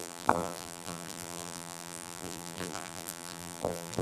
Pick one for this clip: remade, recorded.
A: remade